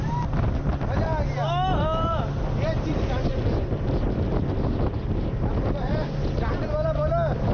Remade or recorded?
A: recorded